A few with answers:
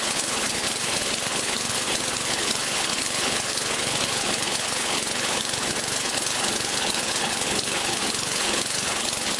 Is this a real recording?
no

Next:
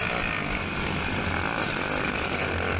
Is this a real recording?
yes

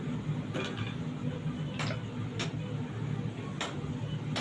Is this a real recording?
yes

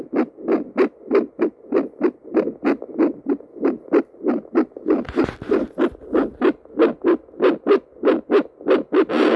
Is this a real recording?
yes